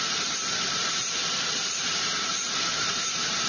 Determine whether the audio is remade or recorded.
remade